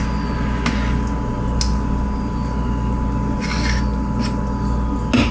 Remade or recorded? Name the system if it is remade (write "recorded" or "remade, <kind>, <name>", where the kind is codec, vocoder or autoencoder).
recorded